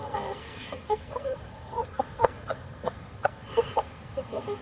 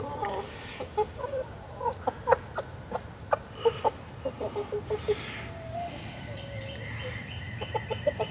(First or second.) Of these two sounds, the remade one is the first